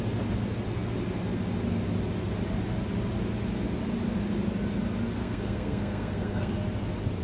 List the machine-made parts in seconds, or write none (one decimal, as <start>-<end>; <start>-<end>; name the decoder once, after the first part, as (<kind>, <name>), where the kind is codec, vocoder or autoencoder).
5.2-6.5 (codec, SNAC)